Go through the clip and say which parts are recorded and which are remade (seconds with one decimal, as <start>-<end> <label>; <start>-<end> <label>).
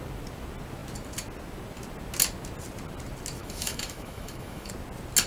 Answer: 0.0-3.4 recorded; 3.4-4.7 remade; 4.7-5.3 recorded